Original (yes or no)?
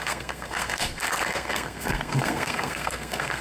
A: no